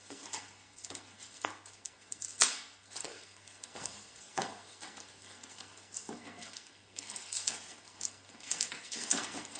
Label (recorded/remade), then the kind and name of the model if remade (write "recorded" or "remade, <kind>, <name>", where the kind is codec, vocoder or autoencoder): remade, codec, SNAC